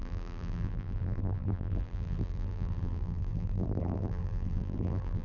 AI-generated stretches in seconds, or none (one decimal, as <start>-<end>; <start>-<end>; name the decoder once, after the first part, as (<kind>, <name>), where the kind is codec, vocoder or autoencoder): 0.0-5.2 (vocoder, BigVGAN v2)